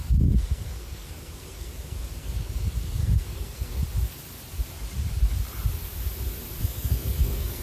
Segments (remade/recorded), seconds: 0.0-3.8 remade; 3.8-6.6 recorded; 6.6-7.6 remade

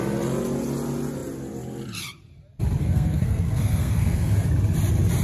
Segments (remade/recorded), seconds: 0.0-2.8 recorded; 2.8-4.3 remade; 4.3-5.2 recorded